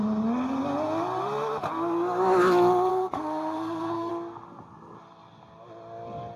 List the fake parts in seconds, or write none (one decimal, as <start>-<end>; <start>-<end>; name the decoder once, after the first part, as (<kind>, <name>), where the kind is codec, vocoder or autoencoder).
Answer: 2.9-4.1 (codec, SNAC)